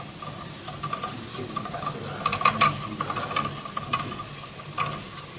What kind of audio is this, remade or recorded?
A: recorded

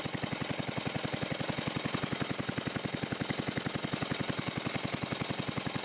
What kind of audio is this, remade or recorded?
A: recorded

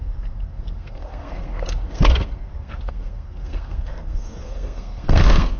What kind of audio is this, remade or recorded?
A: remade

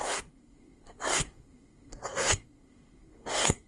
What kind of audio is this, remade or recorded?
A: remade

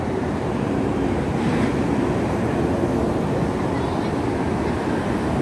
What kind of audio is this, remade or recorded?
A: recorded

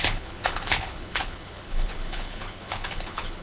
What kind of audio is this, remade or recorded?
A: remade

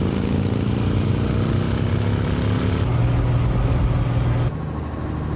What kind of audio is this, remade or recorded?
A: recorded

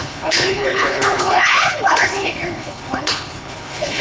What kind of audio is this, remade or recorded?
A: remade